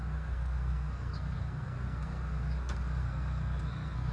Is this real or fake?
fake